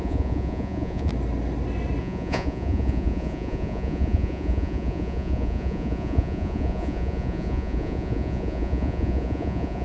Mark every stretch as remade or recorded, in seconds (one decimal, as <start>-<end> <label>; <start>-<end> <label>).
0.0-1.1 remade; 1.1-2.0 recorded; 2.0-9.8 remade